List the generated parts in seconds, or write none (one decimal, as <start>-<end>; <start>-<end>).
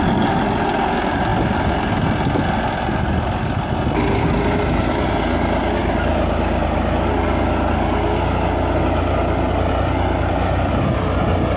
none